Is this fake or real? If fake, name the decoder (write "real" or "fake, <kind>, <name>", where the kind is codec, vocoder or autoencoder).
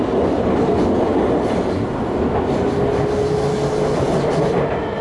real